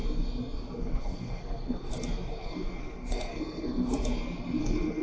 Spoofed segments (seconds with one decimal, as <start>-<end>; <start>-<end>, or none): 0.8-1.9; 2.4-3.9; 4.6-5.0